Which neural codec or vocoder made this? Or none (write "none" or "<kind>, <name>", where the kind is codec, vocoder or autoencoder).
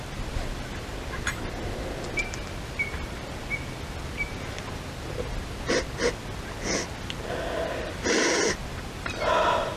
none